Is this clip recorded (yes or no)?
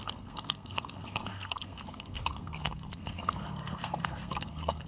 no